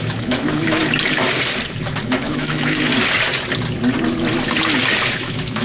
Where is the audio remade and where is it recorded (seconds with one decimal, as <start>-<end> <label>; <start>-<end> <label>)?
0.0-0.8 remade; 0.8-2.0 recorded; 2.0-2.9 remade; 2.9-5.1 recorded; 5.1-5.6 remade